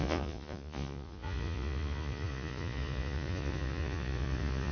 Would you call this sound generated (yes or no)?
yes